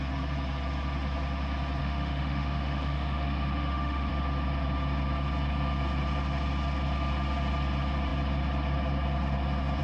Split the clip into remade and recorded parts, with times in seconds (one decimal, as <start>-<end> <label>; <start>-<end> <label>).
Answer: 0.0-1.8 recorded; 1.8-4.1 remade; 4.1-9.8 recorded